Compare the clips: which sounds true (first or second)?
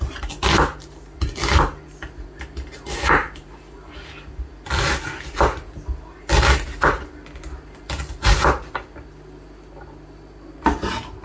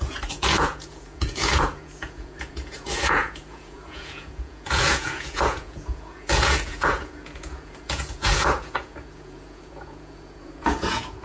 first